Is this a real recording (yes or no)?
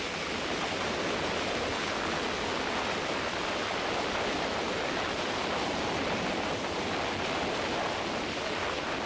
yes